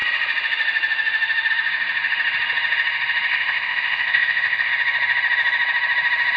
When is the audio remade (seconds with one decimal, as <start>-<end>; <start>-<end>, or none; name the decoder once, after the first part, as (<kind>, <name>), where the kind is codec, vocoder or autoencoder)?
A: 3.3-4.7 (codec, ZipCodec)

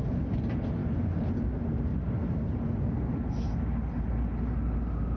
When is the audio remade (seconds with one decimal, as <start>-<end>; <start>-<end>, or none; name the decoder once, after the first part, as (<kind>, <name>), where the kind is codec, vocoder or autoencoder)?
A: none

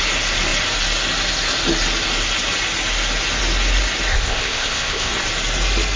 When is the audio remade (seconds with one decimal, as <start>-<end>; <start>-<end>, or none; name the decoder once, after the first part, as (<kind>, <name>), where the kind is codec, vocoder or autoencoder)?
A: 4.1-5.1 (codec, ZipCodec)

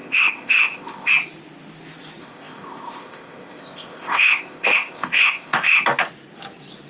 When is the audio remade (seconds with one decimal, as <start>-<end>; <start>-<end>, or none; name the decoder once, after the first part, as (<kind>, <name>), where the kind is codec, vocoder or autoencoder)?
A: 0.0-1.1 (codec, ZipCodec); 2.2-5.8

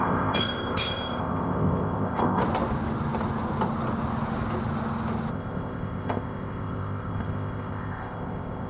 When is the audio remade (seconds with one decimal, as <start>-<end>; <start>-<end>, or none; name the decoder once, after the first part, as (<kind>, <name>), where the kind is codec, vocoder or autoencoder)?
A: 0.0-2.4 (codec, ZipCodec); 5.3-8.7

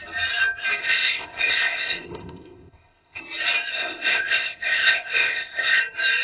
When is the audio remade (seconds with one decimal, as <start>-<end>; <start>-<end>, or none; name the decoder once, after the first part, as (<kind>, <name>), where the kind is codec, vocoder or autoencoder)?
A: 0.8-3.2 (codec, ZipCodec); 3.7-5.8

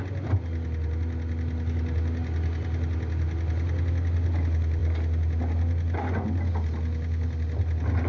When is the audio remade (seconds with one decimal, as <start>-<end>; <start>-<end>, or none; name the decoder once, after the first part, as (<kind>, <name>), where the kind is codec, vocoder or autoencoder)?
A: none

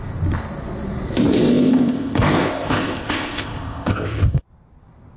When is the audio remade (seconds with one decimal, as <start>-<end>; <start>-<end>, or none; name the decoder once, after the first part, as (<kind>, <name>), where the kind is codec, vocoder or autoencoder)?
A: 1.3-4.4 (codec, ZipCodec)